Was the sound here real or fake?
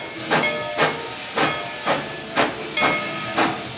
real